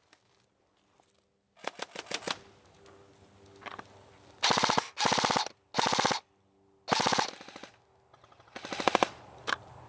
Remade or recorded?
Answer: recorded